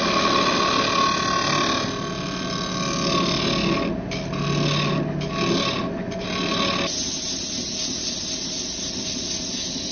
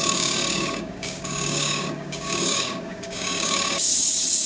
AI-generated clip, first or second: second